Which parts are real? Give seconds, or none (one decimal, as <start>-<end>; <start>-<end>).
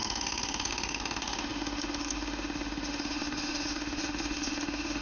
none